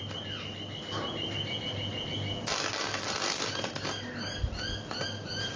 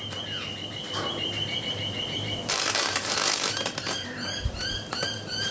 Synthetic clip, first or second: second